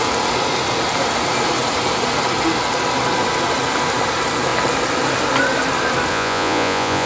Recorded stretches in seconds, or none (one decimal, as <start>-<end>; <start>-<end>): 0.0-6.1